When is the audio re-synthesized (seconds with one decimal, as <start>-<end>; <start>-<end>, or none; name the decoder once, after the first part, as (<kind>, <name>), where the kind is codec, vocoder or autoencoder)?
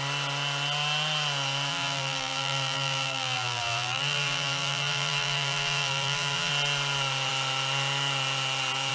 1.7-6.5 (vocoder, BigVGAN v2)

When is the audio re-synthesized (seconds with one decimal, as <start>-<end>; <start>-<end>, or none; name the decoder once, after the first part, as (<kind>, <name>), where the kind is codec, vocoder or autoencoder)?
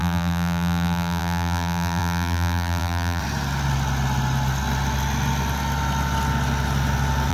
0.0-3.2 (vocoder, BigVGAN v2)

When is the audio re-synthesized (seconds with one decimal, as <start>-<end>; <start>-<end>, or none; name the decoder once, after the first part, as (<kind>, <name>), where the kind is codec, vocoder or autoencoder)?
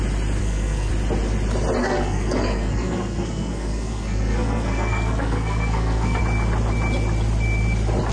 0.4-0.9 (codec, SNAC); 1.8-6.2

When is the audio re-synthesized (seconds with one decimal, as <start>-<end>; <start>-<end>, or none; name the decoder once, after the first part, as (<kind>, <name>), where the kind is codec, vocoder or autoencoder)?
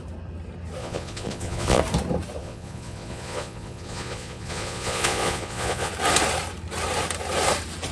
0.8-1.8 (vocoder, Vocos); 2.4-5.9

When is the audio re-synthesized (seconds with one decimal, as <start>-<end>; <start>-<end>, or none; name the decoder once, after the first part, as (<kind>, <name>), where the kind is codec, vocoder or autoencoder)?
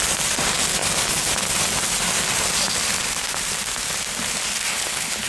4.7-5.3 (codec, HILCodec)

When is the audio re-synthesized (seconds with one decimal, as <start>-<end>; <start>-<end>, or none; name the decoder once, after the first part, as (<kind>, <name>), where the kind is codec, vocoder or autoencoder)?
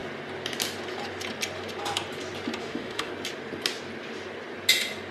2.6-3.1 (autoencoder, DAC-VAE)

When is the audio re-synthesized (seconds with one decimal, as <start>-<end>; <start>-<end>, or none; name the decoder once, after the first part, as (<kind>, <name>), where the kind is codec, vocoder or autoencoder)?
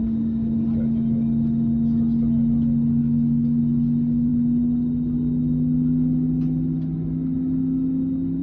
3.0-3.6 (codec, DAC)